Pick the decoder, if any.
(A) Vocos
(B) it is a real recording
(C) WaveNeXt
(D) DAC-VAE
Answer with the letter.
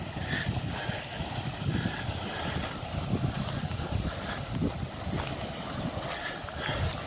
B